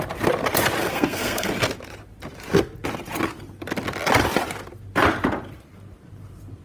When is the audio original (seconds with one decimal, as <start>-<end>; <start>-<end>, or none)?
0.0-0.8; 1.5-6.6